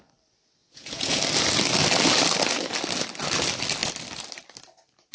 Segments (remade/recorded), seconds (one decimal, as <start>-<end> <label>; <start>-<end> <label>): 0.0-0.6 recorded; 0.6-1.2 remade; 1.2-5.1 recorded